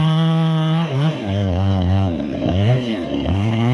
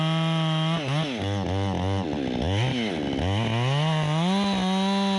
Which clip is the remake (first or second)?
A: first